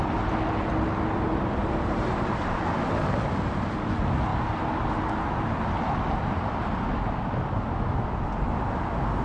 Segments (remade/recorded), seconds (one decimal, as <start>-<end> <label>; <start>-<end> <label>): 0.0-1.1 recorded; 1.1-2.4 remade; 2.4-9.2 recorded